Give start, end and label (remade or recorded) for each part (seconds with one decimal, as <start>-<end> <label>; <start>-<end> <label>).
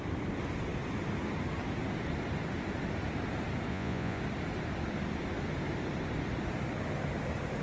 0.0-3.7 recorded; 3.7-4.2 remade; 4.2-7.6 recorded